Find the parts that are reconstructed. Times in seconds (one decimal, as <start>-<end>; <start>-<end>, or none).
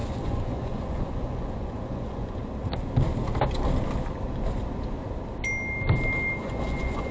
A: 0.0-2.4; 6.4-7.1